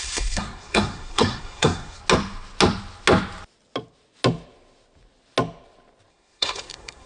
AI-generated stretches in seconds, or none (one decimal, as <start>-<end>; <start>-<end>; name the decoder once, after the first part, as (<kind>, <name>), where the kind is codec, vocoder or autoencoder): 0.0-2.0 (codec, SNAC); 6.1-7.1

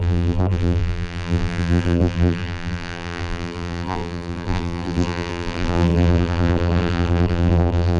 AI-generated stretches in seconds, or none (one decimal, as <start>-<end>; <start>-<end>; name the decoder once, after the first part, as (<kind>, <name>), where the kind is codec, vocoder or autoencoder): 0.0-8.0 (vocoder, BigVGAN v2)

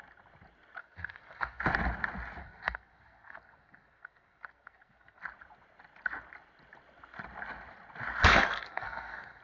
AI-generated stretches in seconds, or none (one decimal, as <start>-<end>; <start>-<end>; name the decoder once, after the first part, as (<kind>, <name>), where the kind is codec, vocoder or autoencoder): 0.8-1.6 (codec, SNAC); 2.4-5.2; 8.3-9.4

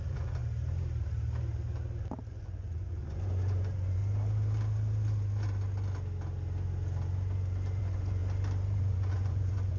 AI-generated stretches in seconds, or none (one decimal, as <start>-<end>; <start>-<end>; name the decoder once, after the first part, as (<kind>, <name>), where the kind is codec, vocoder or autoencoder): 0.0-0.4 (vocoder, Vocos); 2.3-4.0; 7.8-8.2; 8.8-9.8

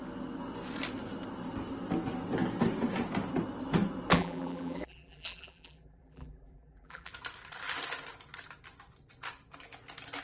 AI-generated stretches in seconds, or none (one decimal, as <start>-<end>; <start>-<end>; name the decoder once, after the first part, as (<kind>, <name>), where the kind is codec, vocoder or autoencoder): 4.1-7.1 (vocoder, BigVGAN v2)

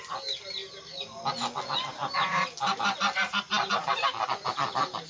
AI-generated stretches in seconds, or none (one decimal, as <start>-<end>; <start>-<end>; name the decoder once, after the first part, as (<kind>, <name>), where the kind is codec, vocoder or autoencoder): none

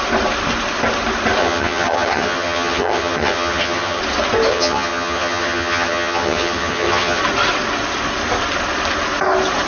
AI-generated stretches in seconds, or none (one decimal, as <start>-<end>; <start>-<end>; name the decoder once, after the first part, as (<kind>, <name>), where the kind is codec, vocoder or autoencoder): 1.4-4.0 (vocoder, HiFi-GAN); 4.5-7.2

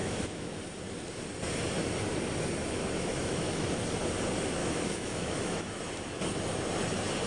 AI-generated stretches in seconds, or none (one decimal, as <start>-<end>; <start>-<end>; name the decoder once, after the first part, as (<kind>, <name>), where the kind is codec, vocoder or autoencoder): 0.0-0.6 (autoencoder, DAC-VAE); 2.6-3.7; 4.6-5.8